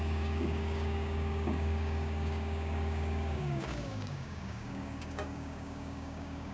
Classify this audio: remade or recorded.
remade